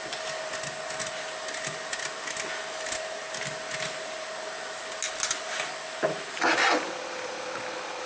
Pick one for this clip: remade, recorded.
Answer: recorded